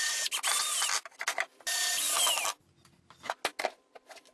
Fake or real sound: real